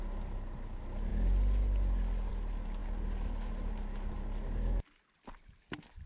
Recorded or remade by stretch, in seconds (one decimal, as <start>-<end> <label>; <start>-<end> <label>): 0.0-6.1 recorded